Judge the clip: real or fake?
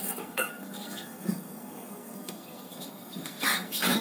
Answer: fake